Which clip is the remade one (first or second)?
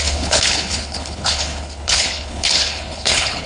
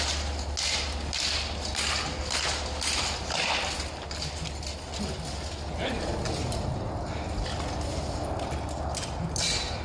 first